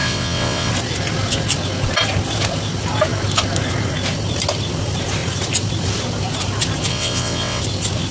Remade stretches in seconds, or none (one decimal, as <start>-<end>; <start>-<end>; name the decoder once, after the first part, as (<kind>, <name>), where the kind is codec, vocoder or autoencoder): 0.0-0.7 (vocoder, WaveNeXt); 6.9-7.6

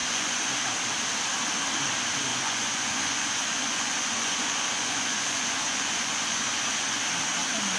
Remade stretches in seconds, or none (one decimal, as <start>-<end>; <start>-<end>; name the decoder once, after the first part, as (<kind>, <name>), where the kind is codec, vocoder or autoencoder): 0.0-0.5 (vocoder, Vocos); 2.3-7.0

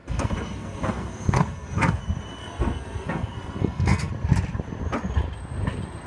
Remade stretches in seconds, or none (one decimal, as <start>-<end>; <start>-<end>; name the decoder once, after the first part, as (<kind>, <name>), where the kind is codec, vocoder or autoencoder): 0.0-2.0 (codec, SNAC); 2.4-4.1

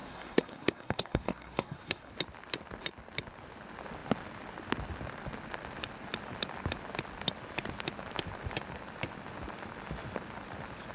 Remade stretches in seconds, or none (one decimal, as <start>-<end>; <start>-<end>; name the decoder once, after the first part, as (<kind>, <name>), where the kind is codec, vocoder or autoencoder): 0.0-2.1 (codec, SNAC)